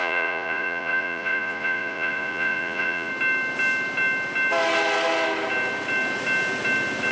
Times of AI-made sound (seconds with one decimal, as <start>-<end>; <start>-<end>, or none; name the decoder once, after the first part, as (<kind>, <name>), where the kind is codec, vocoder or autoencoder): 0.0-3.1 (vocoder, Vocos)